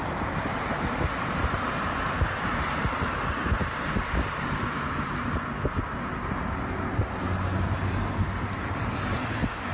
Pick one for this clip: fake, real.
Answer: real